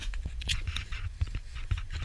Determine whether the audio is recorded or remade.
remade